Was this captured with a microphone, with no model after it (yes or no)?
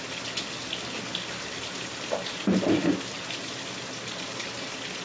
yes